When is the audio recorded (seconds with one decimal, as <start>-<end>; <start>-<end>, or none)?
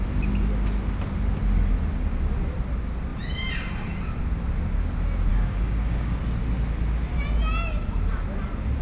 0.0-5.3; 6.2-8.8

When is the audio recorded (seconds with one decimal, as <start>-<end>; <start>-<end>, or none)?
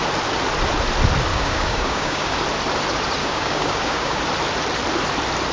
0.0-1.3; 2.4-3.2; 4.2-5.5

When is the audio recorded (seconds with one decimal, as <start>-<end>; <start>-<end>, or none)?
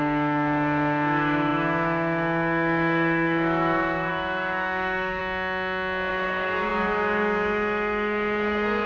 5.2-6.1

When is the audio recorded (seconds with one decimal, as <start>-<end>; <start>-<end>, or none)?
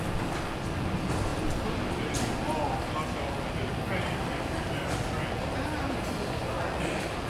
0.0-7.3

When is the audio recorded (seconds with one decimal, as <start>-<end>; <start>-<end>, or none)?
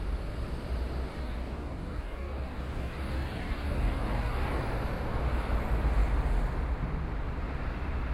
0.0-1.1; 4.6-8.1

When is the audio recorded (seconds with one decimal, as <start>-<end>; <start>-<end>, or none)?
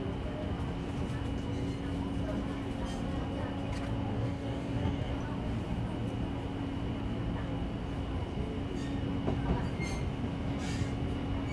0.0-4.1; 5.1-11.5